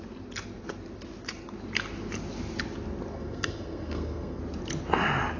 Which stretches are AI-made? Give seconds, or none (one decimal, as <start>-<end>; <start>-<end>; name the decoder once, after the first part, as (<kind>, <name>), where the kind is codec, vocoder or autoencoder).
3.1-4.4 (codec, SNAC)